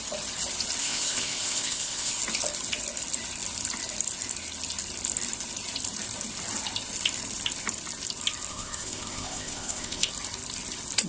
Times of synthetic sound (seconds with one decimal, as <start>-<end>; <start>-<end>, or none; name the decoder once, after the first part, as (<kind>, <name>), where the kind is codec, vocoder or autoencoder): 0.8-2.2 (codec, ZipCodec); 8.5-10.1